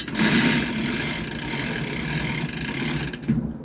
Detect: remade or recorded recorded